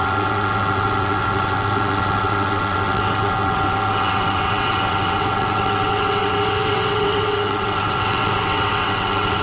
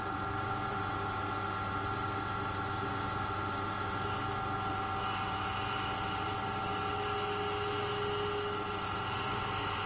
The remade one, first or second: first